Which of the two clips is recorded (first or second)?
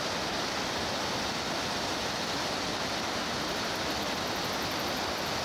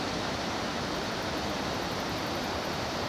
first